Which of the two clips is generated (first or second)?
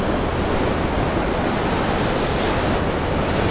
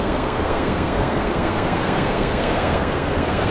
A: second